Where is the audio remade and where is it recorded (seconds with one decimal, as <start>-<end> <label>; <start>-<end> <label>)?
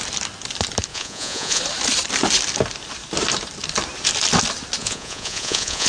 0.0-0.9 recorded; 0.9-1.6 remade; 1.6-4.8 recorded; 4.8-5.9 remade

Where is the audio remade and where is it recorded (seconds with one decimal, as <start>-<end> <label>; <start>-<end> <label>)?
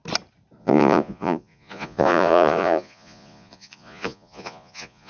0.0-0.6 recorded; 0.6-5.1 remade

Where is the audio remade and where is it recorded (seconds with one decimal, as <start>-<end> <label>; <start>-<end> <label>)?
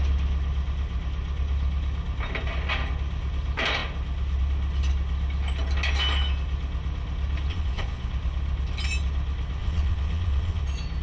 0.0-7.5 recorded; 7.5-8.1 remade; 8.1-9.6 recorded; 9.6-10.6 remade; 10.6-11.0 recorded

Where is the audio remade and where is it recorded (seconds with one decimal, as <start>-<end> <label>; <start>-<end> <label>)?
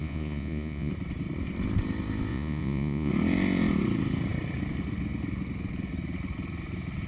0.0-0.9 remade; 0.9-2.3 recorded; 2.3-3.1 remade; 3.1-7.1 recorded